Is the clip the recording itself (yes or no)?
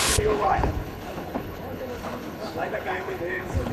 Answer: no